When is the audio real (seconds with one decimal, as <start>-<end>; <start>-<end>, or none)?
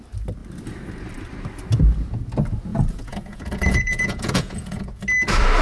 0.0-2.7; 5.0-5.6